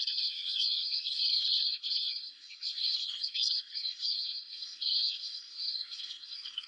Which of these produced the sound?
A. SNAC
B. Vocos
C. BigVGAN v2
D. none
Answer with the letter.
A